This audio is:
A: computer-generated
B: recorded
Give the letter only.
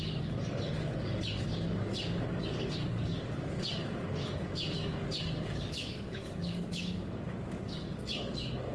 A